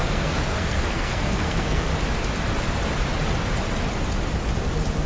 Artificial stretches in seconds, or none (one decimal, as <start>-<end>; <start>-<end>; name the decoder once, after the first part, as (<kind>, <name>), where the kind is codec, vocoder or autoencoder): 0.0-1.9 (codec, SNAC)